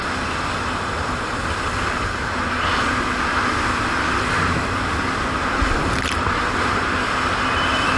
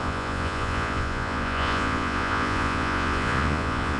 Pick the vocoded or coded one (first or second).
second